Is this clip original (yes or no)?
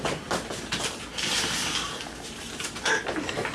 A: yes